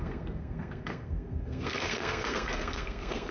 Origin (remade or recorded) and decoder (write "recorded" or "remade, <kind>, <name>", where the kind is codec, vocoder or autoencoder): remade, codec, SNAC